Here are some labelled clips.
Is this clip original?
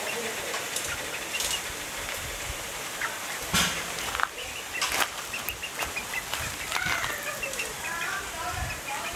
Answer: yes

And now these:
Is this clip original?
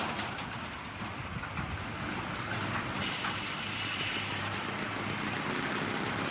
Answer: yes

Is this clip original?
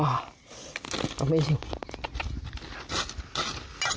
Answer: yes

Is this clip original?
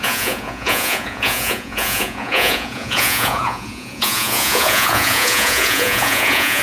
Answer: no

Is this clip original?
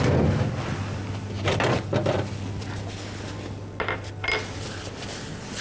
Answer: yes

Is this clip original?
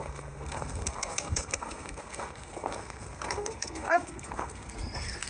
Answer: no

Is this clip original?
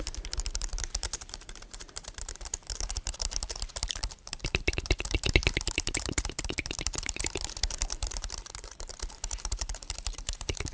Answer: no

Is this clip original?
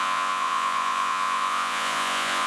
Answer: no